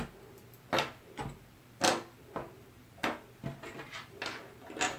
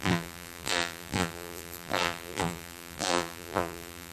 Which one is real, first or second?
first